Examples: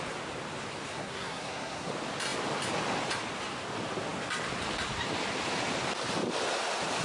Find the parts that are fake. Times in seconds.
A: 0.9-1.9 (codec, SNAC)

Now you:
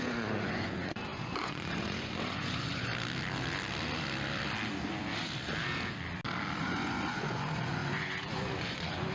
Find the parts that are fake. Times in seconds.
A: 0.0-2.9 (vocoder, Vocos); 6.6-9.1